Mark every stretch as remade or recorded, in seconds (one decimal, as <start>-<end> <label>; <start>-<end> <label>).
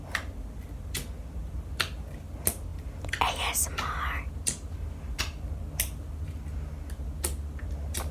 0.0-8.1 recorded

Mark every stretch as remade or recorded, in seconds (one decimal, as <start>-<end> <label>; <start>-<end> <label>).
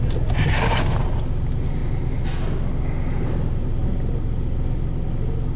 0.0-5.6 recorded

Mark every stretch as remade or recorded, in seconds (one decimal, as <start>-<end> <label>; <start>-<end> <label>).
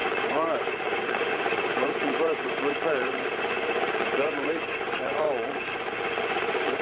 0.0-6.8 remade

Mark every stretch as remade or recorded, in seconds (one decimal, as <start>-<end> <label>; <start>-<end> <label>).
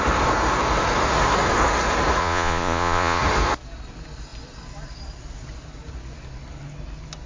0.0-2.2 recorded; 2.2-3.2 remade; 3.2-7.3 recorded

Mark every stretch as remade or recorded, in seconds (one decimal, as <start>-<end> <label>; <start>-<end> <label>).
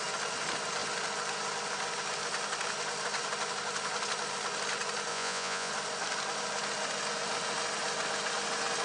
0.0-5.1 recorded; 5.1-5.7 remade; 5.7-8.8 recorded